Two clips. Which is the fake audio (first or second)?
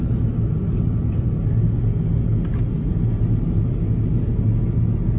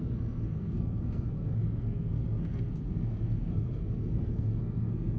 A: second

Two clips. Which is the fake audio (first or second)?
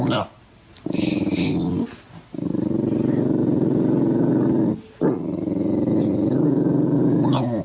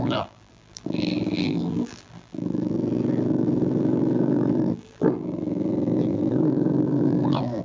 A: second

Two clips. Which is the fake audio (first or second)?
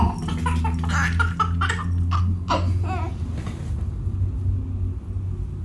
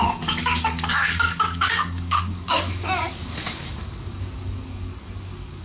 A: second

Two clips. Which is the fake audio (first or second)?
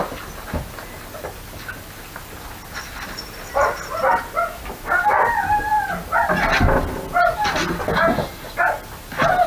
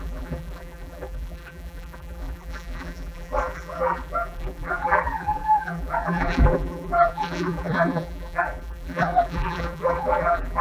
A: second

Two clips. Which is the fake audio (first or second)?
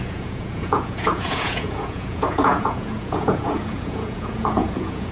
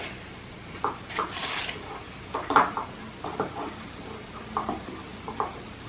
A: first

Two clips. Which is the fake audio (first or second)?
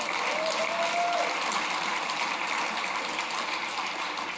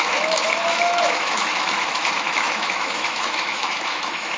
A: second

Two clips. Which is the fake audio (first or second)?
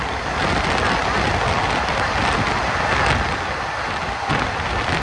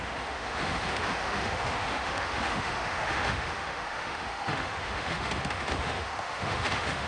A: second